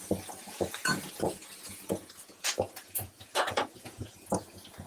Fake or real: fake